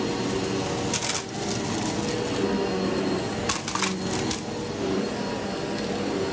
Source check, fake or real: real